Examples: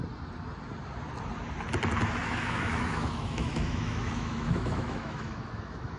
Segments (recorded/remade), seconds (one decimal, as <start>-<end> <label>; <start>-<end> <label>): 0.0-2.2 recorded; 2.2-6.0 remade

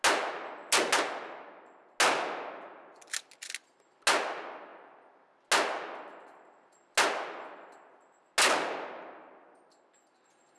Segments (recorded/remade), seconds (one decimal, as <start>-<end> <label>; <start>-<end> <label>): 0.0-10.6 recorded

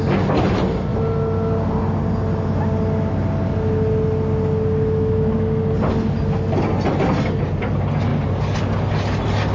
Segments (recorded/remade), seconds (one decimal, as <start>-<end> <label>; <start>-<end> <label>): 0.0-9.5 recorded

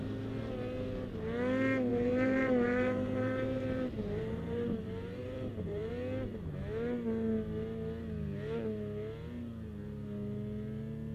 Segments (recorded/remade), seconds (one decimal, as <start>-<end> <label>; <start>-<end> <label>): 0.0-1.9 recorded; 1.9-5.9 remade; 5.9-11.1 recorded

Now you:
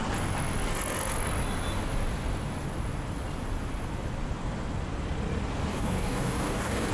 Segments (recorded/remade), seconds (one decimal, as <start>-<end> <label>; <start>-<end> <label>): 0.0-5.7 recorded; 5.7-6.9 remade